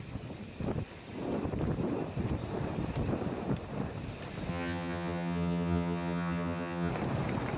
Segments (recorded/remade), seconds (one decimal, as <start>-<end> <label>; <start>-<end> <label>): 0.0-4.5 recorded; 4.5-6.9 remade; 6.9-7.6 recorded